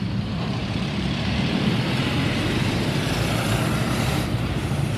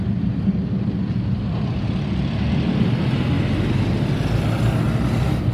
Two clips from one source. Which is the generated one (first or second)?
first